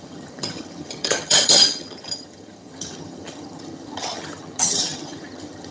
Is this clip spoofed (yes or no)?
yes